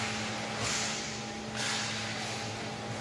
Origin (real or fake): real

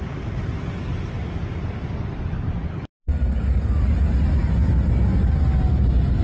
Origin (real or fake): real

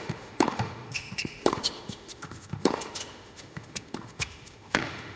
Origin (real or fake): fake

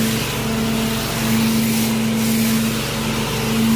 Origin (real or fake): real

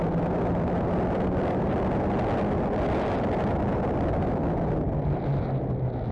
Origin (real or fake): real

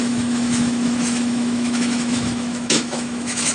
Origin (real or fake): fake